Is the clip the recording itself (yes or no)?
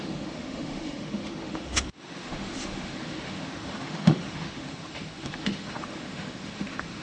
no